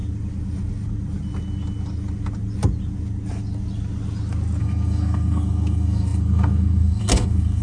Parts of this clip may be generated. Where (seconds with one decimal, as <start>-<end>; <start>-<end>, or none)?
4.6-7.6